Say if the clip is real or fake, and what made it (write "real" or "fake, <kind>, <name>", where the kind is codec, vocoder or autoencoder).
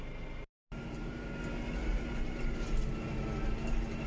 real